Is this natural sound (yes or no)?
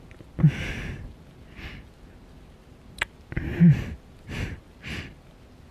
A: yes